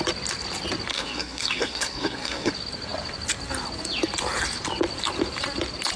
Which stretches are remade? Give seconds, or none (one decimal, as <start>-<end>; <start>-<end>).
0.9-2.5